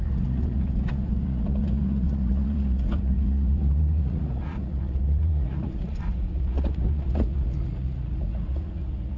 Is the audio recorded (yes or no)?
no